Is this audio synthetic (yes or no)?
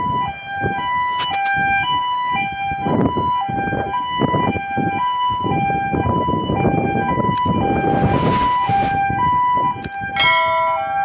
no